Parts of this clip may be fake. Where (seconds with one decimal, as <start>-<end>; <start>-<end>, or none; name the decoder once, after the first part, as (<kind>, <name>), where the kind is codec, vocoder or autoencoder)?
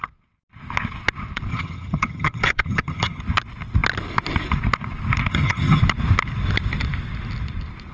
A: 1.5-3.2 (vocoder, HiFi-GAN); 5.3-5.8